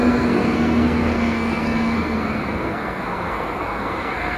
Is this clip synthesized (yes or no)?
yes